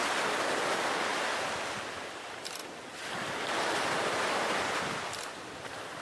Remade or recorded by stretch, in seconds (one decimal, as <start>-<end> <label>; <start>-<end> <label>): 0.0-6.0 remade